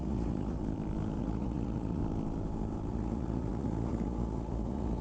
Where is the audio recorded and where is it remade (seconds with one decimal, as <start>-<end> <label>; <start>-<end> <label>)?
0.0-0.6 remade; 0.6-1.2 recorded; 1.2-2.0 remade; 2.0-2.9 recorded; 2.9-5.0 remade